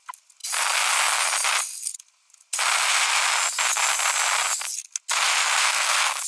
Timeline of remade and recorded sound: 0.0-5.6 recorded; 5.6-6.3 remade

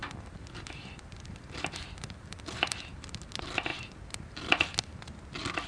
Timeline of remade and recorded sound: 0.0-3.3 remade; 3.3-3.7 recorded; 3.7-5.0 remade; 5.0-5.7 recorded